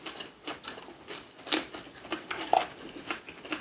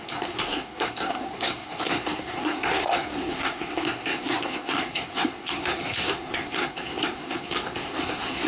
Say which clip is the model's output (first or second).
second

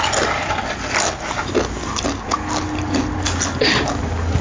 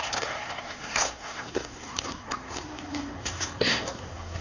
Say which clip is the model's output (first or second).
second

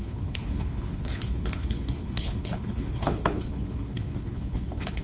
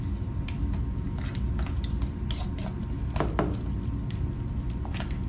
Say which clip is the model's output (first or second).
first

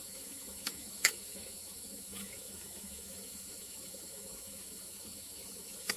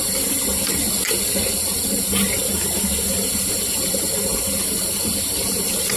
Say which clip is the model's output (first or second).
first